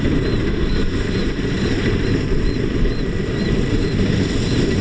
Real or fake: fake